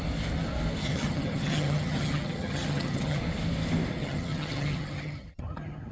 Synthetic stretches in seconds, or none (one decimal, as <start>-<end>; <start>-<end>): 0.8-3.2; 3.9-5.9